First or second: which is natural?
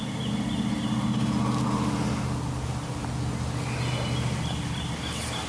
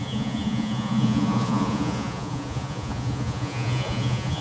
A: first